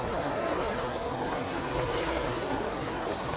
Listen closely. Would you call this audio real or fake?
fake